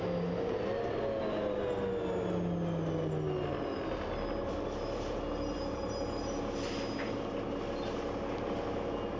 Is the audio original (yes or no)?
yes